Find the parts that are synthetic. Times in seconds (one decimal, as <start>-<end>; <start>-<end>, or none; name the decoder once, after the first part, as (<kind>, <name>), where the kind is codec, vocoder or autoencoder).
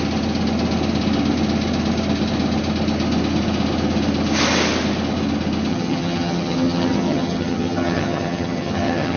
5.7-9.2 (vocoder, HiFi-GAN)